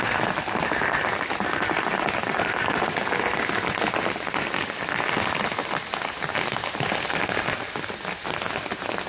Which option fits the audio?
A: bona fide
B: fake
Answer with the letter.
A